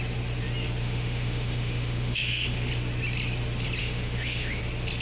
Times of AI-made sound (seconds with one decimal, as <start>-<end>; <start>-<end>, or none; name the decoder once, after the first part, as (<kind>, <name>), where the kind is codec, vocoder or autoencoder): 0.8-2.7 (autoencoder, DAC-VAE); 3.8-4.6